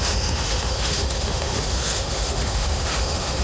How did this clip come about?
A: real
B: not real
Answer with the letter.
B